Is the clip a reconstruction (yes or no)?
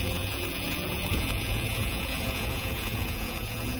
yes